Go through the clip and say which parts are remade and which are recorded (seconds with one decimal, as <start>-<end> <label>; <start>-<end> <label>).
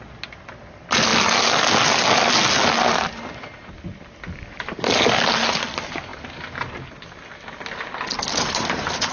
0.0-9.1 recorded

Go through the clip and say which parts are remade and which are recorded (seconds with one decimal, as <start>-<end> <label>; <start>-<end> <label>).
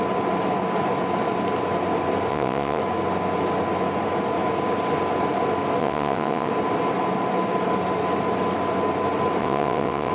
0.0-2.3 recorded; 2.3-2.8 remade; 2.8-5.8 recorded; 5.8-6.5 remade; 6.5-9.4 recorded; 9.4-10.1 remade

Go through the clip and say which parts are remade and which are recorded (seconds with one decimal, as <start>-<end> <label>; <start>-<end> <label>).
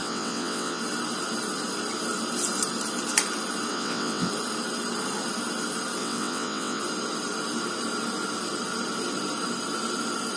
0.0-0.8 remade; 0.8-3.7 recorded; 3.7-4.3 remade; 4.3-6.0 recorded; 6.0-6.8 remade; 6.8-10.4 recorded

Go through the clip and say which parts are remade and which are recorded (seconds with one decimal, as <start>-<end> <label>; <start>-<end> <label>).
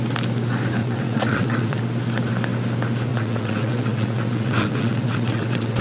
0.0-0.8 recorded; 0.8-1.8 remade; 1.8-3.1 recorded; 3.1-5.8 remade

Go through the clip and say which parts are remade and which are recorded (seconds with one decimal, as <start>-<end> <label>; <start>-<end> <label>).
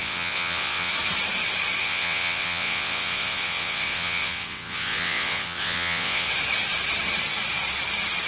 0.0-0.9 remade; 0.9-1.8 recorded; 1.8-6.3 remade; 6.3-8.3 recorded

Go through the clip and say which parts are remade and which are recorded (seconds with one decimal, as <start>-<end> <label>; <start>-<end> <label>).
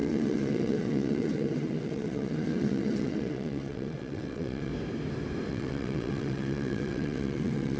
0.0-4.7 remade; 4.7-5.5 recorded; 5.5-7.8 remade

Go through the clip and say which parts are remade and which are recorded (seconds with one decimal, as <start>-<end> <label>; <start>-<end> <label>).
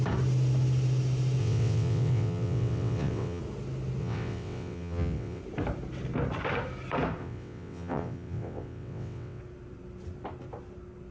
0.0-1.4 recorded; 1.4-3.4 remade; 3.4-4.0 recorded; 4.0-5.4 remade; 5.4-7.2 recorded; 7.2-9.4 remade; 9.4-11.1 recorded